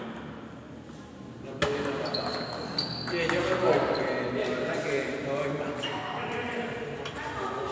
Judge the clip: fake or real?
real